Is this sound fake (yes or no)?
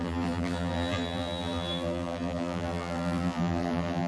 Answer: yes